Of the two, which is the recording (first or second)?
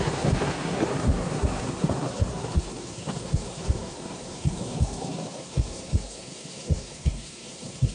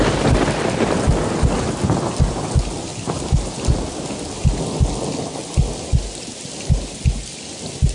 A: second